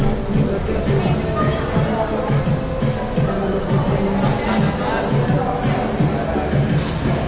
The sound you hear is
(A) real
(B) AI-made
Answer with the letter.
A